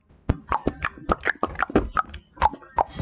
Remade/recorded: recorded